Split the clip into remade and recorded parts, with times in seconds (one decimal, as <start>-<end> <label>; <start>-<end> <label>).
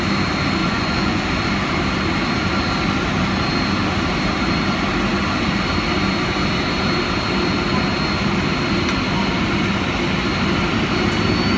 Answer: 0.0-0.6 recorded; 0.6-1.2 remade; 1.2-11.6 recorded